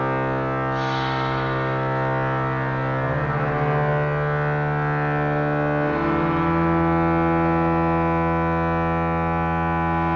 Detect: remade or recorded recorded